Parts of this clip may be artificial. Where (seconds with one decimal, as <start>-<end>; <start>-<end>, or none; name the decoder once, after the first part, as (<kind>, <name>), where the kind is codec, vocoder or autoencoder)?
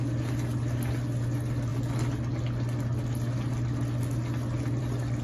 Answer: none